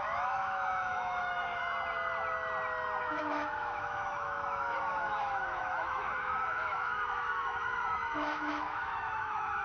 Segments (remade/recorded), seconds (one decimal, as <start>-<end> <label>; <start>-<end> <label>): 0.0-1.6 remade; 1.6-3.0 recorded; 3.0-9.6 remade